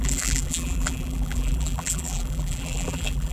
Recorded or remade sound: remade